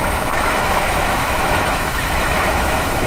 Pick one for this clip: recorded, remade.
remade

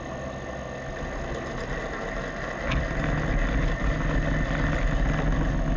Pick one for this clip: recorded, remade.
recorded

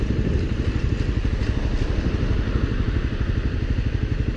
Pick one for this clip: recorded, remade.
recorded